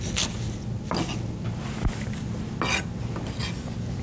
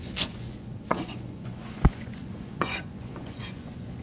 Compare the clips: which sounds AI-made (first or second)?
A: second